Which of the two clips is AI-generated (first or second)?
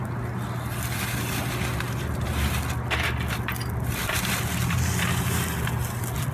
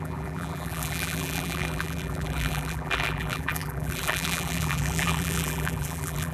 second